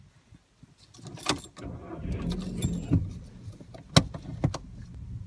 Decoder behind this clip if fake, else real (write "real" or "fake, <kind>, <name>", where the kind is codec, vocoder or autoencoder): real